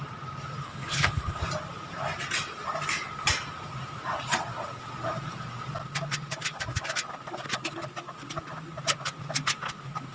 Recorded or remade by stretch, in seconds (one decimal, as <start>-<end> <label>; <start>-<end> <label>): 0.0-0.6 recorded; 0.6-1.4 remade; 1.4-10.1 recorded